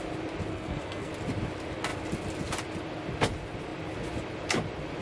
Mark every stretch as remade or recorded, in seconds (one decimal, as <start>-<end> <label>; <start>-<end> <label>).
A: 0.0-0.5 recorded; 0.5-1.1 remade; 1.1-5.0 recorded